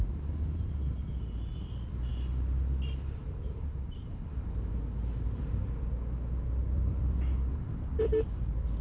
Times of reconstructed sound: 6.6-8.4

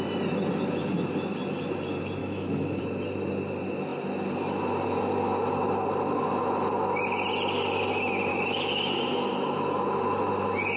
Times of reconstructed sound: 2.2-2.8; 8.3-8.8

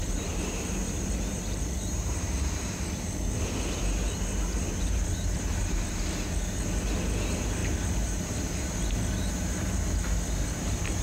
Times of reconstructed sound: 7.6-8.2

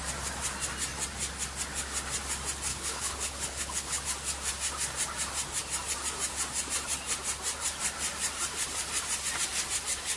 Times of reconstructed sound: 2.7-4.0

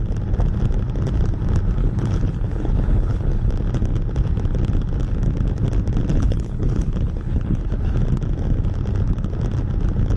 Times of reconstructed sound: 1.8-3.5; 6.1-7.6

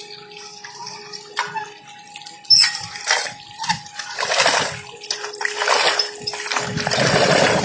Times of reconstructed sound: none

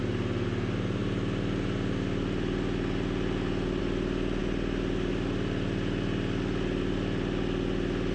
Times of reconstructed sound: none

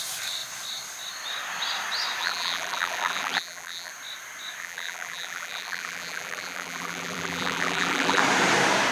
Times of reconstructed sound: 2.2-3.9; 4.6-8.2